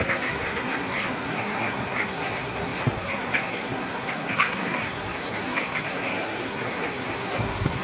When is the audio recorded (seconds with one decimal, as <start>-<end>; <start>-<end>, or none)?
none